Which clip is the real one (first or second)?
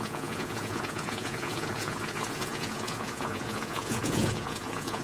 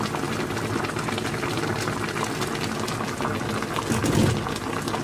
second